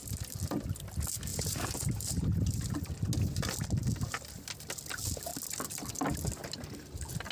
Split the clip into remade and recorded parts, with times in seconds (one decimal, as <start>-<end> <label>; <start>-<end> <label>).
0.0-1.3 recorded; 1.3-2.6 remade; 2.6-7.3 recorded